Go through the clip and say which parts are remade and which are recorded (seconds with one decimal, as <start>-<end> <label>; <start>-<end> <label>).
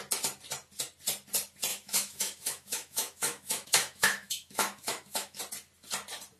0.0-1.7 recorded; 1.7-5.4 remade; 5.4-6.4 recorded